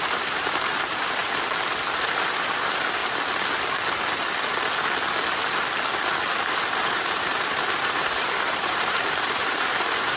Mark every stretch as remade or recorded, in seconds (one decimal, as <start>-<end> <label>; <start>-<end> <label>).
0.0-1.2 remade; 1.2-1.8 recorded; 1.8-3.0 remade; 3.0-6.4 recorded; 6.4-10.2 remade